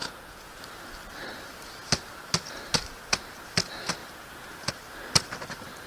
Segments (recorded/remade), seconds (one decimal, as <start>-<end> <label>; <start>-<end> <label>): 0.0-0.6 remade; 0.6-4.0 recorded; 4.0-4.7 remade; 4.7-5.9 recorded